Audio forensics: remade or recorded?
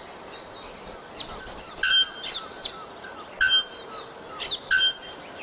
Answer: recorded